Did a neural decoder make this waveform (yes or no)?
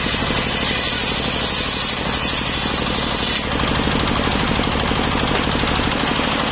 no